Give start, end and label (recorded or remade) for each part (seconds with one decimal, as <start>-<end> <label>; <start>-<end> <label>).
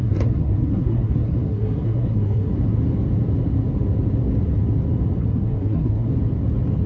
0.0-2.5 remade; 2.5-5.2 recorded; 5.2-6.1 remade; 6.1-6.9 recorded